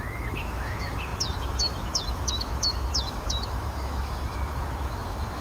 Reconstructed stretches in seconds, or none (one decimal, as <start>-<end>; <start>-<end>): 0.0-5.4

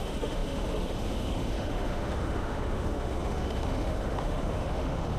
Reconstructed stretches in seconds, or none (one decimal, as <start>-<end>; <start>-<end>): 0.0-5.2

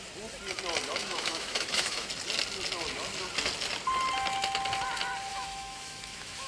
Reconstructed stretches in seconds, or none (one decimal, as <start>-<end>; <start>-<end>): 1.0-2.1; 5.3-6.5